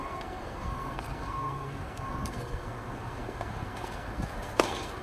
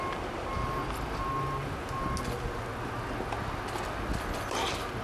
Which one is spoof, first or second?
first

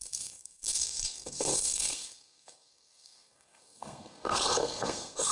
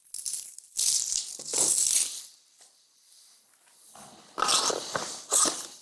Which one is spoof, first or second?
first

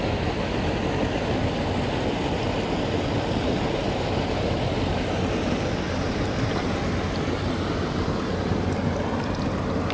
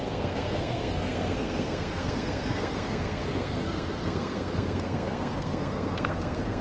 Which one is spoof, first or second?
second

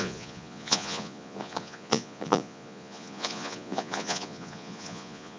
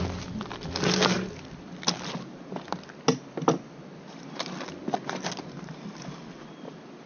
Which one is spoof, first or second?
first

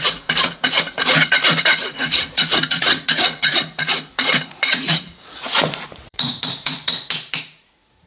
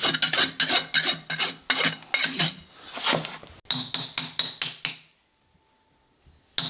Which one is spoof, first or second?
first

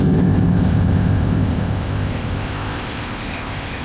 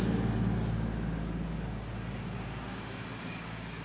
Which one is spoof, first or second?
first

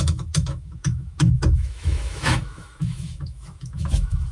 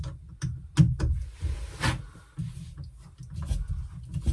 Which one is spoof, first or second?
first